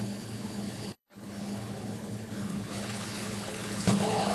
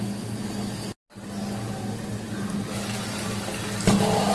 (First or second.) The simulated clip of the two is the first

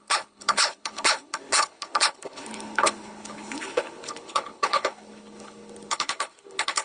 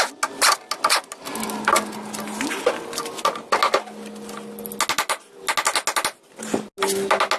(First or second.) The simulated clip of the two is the first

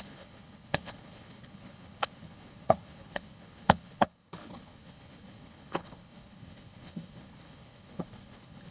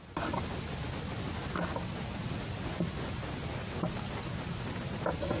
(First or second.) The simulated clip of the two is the first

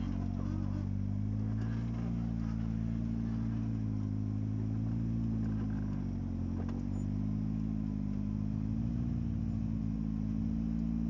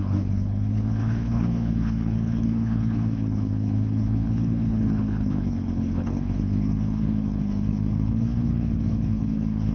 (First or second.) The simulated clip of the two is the second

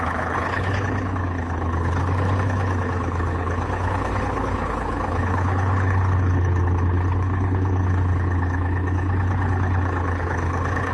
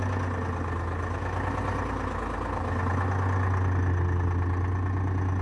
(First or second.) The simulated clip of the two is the first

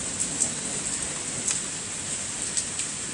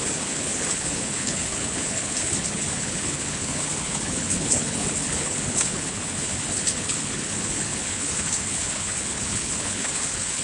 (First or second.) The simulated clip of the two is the second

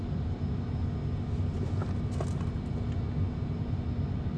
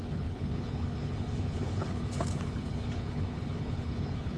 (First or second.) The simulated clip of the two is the second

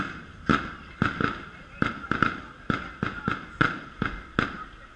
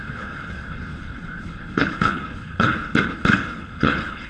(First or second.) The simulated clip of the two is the second